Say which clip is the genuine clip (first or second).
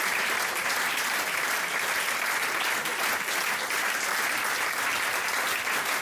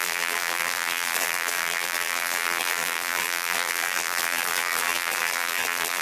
first